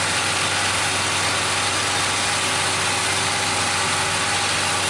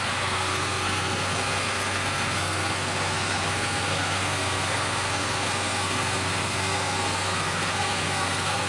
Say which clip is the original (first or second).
first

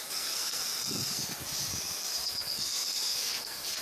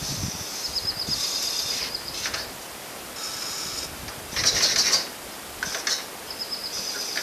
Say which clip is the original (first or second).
second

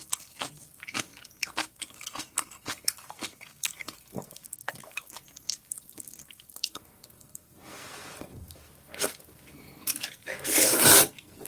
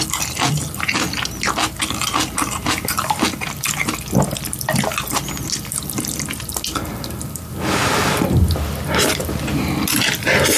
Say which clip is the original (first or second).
second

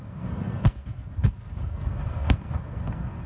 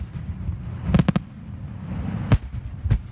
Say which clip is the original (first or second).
second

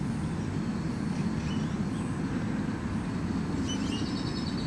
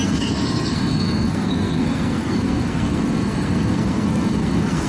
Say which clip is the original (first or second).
first